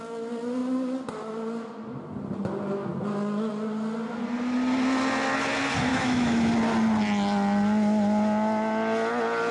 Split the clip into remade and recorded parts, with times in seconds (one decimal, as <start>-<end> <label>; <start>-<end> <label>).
0.0-5.9 recorded; 5.9-6.5 remade; 6.5-9.5 recorded